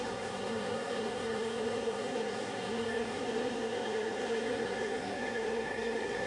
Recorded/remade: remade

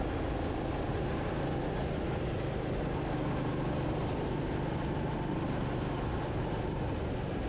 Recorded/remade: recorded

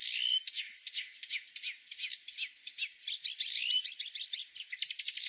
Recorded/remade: remade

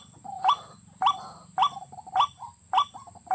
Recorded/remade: recorded